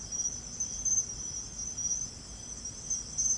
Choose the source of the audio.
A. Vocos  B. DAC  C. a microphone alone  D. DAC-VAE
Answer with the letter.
C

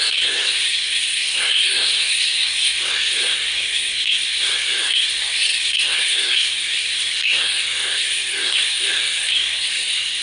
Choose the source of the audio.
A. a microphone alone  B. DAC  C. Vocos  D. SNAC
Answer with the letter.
D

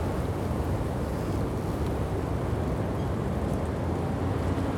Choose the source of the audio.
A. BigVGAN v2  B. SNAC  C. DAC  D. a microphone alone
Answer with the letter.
D